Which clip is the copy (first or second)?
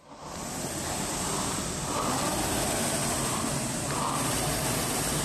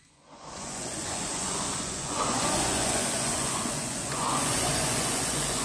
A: second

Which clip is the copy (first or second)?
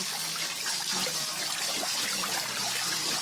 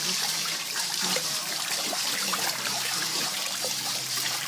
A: second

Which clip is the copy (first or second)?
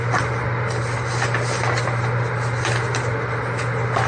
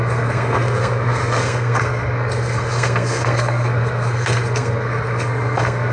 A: second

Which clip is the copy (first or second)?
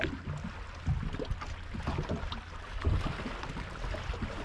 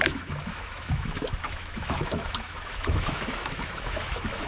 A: second